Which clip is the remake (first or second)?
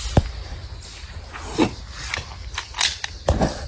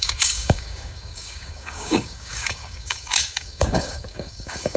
second